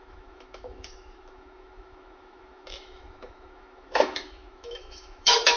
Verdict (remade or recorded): remade